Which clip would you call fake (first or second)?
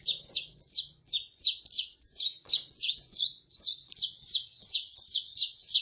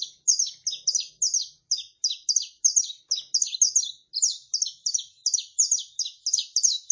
first